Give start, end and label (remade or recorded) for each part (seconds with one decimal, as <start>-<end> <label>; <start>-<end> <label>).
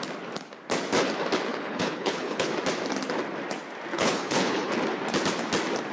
0.0-1.5 recorded; 1.5-2.5 remade; 2.5-3.9 recorded; 3.9-4.7 remade; 4.7-5.9 recorded